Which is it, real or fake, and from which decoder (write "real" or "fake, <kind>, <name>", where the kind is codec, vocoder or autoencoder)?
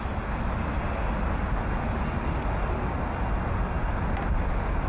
real